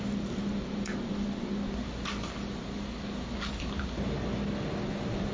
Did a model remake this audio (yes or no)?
no